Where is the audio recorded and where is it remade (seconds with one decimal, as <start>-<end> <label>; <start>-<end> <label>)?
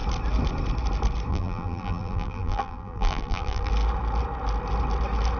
0.0-1.3 recorded; 1.3-3.7 remade; 3.7-5.4 recorded